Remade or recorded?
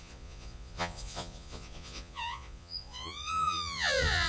remade